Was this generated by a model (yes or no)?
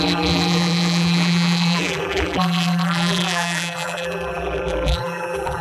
yes